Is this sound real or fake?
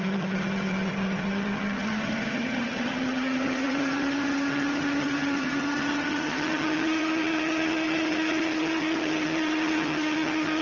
fake